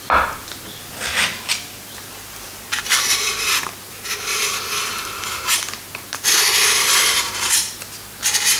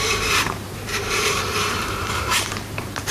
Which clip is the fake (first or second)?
second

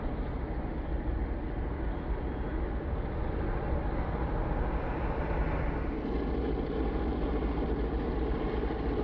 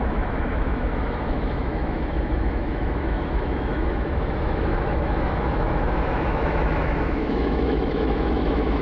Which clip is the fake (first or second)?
second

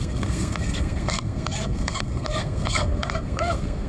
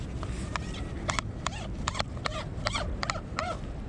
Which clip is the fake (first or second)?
first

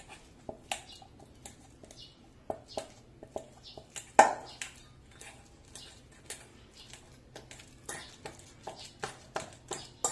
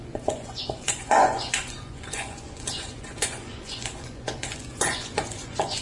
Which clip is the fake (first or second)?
second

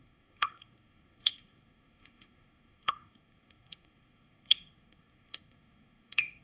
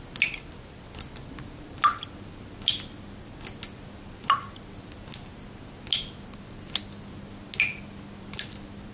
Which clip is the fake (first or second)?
first